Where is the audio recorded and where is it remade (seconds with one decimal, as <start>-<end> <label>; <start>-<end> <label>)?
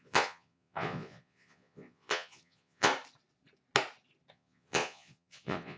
0.0-2.9 remade; 2.9-4.3 recorded; 4.3-5.8 remade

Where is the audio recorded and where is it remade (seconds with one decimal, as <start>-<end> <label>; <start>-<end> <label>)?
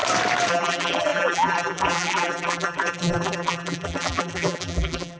0.0-0.5 recorded; 0.5-5.2 remade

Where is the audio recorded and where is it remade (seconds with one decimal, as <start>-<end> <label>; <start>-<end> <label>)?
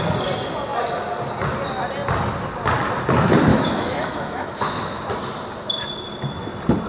0.0-3.5 recorded; 3.5-5.0 remade; 5.0-6.9 recorded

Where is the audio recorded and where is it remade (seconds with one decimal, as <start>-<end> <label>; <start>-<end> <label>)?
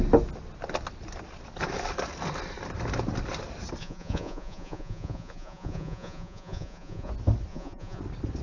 0.0-3.8 recorded; 3.8-7.1 remade; 7.1-7.5 recorded; 7.5-8.0 remade; 8.0-8.4 recorded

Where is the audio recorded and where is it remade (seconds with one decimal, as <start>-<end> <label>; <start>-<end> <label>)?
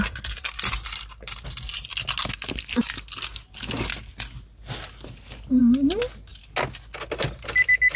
0.0-8.0 recorded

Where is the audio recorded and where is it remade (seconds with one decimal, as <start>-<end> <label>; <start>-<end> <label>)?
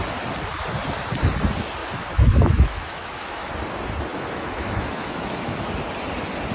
0.0-1.8 recorded; 1.8-3.5 remade; 3.5-4.1 recorded; 4.1-5.7 remade; 5.7-6.5 recorded